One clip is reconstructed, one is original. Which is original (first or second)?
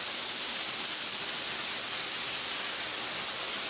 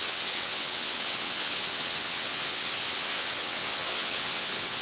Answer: first